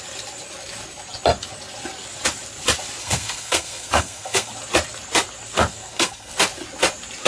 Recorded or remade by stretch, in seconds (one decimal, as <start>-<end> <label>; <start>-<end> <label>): 0.0-3.0 recorded; 3.0-4.5 remade; 4.5-5.7 recorded; 5.7-6.3 remade; 6.3-7.3 recorded